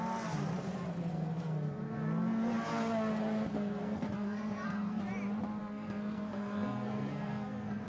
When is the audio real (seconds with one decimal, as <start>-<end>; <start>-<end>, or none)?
0.0-1.1; 1.9-3.5; 5.0-5.6